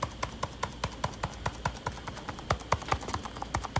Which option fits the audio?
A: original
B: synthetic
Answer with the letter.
A